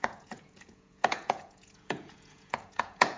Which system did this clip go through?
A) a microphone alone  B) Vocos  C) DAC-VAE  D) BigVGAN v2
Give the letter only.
B